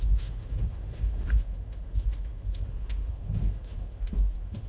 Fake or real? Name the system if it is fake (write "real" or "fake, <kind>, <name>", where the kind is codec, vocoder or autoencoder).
fake, autoencoder, DAC-VAE